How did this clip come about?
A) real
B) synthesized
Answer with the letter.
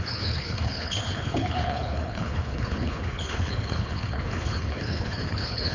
B